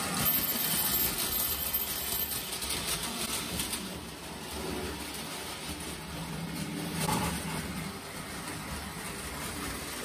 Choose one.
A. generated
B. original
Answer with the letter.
B